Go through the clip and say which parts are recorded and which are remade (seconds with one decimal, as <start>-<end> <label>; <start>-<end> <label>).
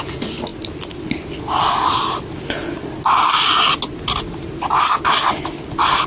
0.0-6.1 recorded